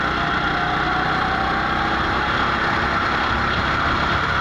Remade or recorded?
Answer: recorded